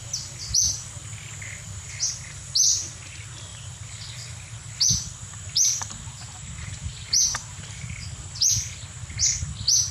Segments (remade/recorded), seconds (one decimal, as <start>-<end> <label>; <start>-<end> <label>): 0.0-1.1 recorded; 1.1-2.0 remade; 2.0-9.9 recorded